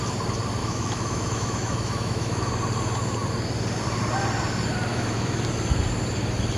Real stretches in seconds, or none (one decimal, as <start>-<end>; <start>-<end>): 0.0-0.6; 2.5-4.9; 5.4-6.6